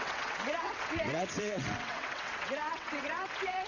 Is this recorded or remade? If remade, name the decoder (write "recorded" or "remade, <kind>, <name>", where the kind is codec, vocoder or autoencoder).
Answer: remade, vocoder, WaveNeXt